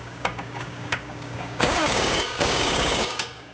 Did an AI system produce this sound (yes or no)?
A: yes